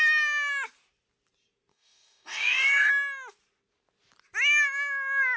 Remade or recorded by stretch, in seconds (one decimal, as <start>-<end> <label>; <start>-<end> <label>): 0.0-1.7 recorded; 1.7-2.9 remade; 2.9-5.4 recorded